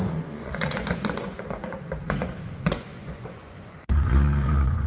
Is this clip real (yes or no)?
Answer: no